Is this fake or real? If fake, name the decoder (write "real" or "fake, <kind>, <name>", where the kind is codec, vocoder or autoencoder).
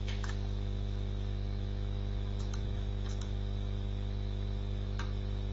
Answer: fake, autoencoder, DAC-VAE